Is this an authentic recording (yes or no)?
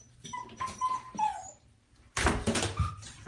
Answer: yes